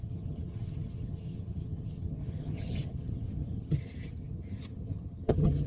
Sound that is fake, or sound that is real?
fake